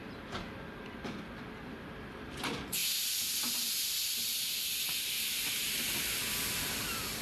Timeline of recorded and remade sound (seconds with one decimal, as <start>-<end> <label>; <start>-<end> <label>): 0.0-2.8 remade; 2.8-3.9 recorded; 3.9-7.2 remade